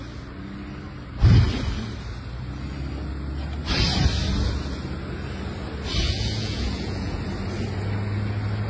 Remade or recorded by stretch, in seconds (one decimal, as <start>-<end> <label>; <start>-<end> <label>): 0.0-6.0 recorded; 6.0-7.2 remade; 7.2-8.7 recorded